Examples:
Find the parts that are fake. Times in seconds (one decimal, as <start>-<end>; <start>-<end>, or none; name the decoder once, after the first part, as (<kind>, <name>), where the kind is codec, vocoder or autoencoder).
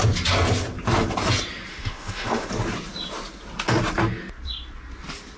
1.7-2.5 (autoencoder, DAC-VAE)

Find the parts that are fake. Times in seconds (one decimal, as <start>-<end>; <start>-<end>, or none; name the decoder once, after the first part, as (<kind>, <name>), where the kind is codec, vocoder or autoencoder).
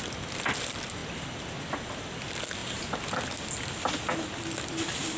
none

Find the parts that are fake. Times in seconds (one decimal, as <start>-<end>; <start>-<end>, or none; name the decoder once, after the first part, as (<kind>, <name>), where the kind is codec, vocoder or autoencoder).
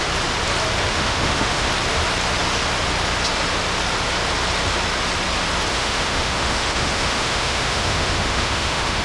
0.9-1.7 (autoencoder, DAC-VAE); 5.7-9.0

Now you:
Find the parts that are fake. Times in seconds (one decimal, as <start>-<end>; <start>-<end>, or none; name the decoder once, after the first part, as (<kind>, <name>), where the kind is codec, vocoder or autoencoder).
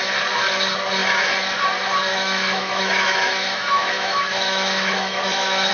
2.1-5.7 (autoencoder, DAC-VAE)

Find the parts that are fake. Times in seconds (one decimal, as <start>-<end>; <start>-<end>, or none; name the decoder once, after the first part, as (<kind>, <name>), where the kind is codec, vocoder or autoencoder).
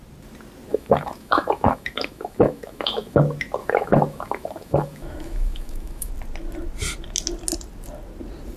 0.7-3.2 (autoencoder, DAC-VAE); 3.6-6.1